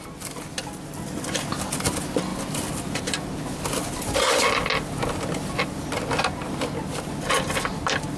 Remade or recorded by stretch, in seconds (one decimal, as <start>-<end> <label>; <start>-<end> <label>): 0.0-8.2 recorded